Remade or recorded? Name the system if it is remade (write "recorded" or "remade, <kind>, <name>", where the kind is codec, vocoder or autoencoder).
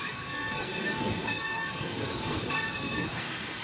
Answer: remade, codec, SNAC